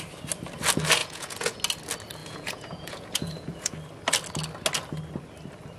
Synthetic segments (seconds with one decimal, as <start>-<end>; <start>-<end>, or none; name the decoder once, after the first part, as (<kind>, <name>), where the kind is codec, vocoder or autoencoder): 1.0-1.6 (vocoder, Vocos); 2.2-3.7